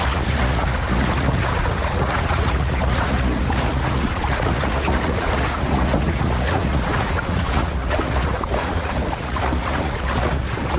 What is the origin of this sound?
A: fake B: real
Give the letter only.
A